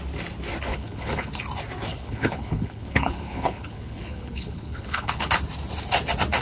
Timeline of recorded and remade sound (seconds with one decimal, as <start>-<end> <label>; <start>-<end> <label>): 0.0-0.7 recorded; 0.7-1.3 remade; 1.3-1.9 recorded; 1.9-5.3 remade; 5.3-6.4 recorded